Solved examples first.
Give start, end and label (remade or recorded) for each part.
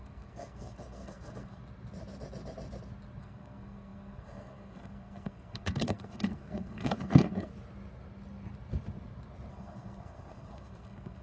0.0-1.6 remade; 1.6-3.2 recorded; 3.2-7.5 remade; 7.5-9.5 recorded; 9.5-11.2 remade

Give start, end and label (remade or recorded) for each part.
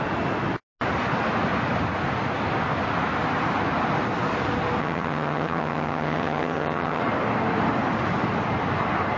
0.0-4.8 recorded; 4.8-7.0 remade; 7.0-9.2 recorded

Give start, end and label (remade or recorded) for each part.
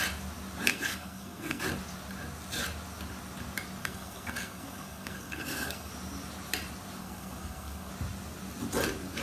0.0-0.7 recorded; 0.7-1.6 remade; 1.6-3.8 recorded; 3.8-5.9 remade; 5.9-7.0 recorded; 7.0-7.9 remade; 7.9-9.2 recorded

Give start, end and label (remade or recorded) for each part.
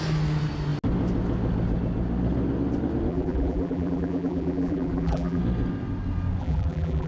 0.0-3.1 recorded; 3.1-5.4 remade; 5.4-6.4 recorded; 6.4-7.1 remade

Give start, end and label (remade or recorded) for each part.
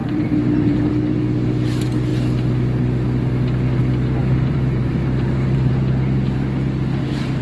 0.0-0.9 remade; 0.9-4.2 recorded; 4.2-5.7 remade; 5.7-7.4 recorded